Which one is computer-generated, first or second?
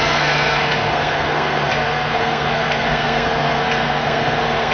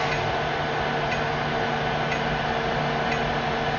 first